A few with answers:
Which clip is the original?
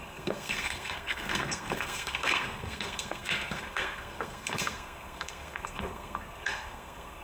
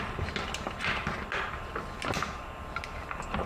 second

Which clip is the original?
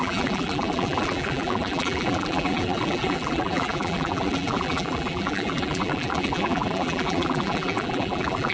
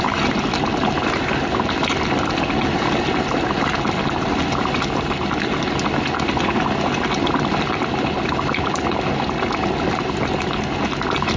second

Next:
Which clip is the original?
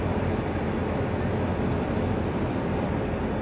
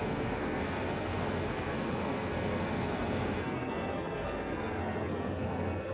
first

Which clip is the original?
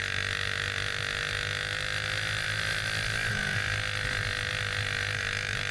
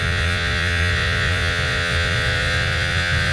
first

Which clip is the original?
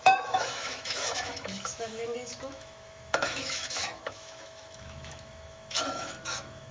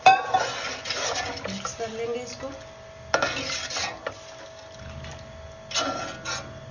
second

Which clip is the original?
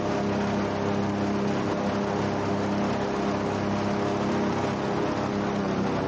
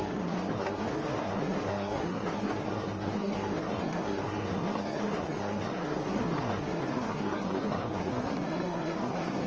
first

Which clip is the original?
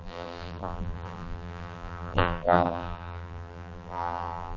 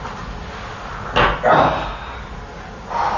second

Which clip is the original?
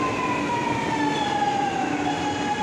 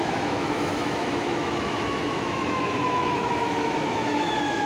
first